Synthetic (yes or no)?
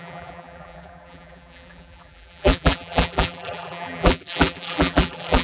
yes